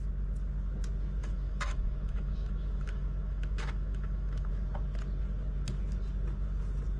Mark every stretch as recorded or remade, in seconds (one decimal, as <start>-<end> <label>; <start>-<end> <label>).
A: 0.0-1.2 recorded; 1.2-4.5 remade; 4.5-7.0 recorded